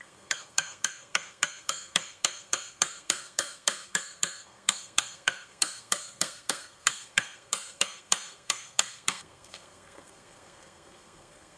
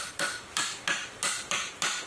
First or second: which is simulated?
first